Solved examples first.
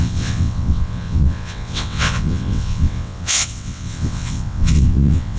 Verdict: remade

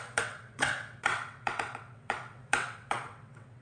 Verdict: remade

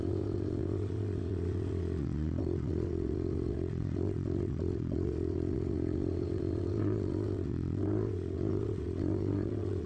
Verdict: remade